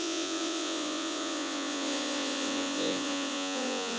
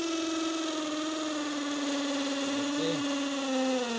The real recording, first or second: second